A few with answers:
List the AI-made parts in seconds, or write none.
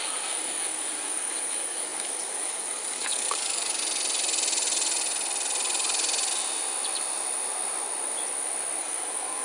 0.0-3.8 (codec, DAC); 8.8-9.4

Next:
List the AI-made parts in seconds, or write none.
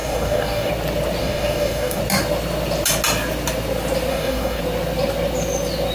0.0-0.7 (codec, DAC); 1.2-2.0; 4.1-4.6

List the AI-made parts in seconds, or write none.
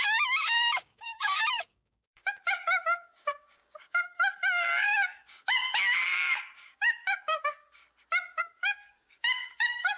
0.0-7.8 (codec, DAC); 8.4-10.0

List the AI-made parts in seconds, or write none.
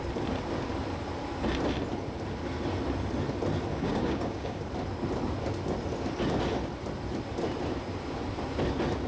3.7-4.7 (codec, DAC)